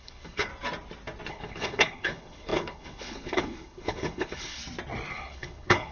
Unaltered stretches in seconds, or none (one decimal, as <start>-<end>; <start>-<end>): 0.5-1.3; 4.6-5.1